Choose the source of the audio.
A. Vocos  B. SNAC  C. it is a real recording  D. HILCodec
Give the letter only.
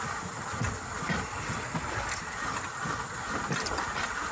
C